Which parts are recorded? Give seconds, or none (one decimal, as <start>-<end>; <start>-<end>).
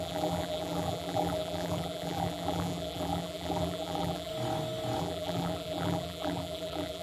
4.3-5.0